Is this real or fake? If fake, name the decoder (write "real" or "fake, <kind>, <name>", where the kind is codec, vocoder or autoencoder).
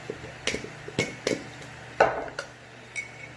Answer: real